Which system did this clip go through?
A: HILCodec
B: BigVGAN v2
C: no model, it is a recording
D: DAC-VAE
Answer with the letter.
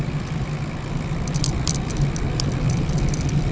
B